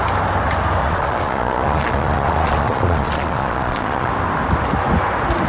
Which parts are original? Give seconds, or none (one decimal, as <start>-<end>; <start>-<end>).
0.0-0.8; 4.1-5.5